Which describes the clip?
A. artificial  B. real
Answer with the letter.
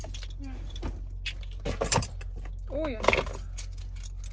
B